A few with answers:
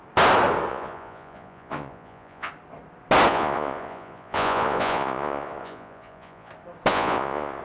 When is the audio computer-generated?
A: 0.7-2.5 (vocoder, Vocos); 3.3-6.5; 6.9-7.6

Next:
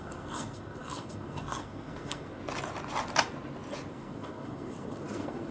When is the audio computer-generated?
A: 0.0-2.4 (codec, SNAC); 3.9-5.5

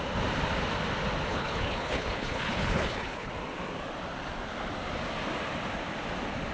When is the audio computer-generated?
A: 1.3-3.3 (codec, HILCodec)

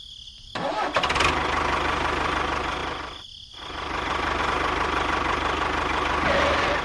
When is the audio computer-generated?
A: 2.8-4.4 (vocoder, BigVGAN v2)

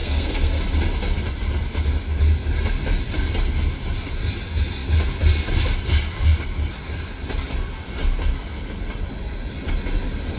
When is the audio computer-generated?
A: 0.0-0.6 (codec, SNAC)